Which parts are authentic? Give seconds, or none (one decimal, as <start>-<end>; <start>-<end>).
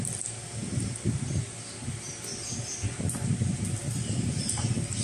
0.0-5.0